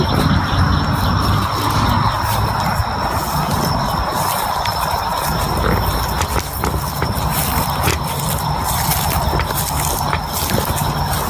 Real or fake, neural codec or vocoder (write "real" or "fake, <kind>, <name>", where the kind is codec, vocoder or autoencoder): real